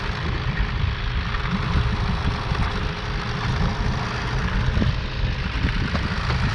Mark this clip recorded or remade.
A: recorded